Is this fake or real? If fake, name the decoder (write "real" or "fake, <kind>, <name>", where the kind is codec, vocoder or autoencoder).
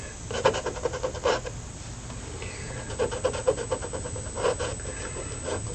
real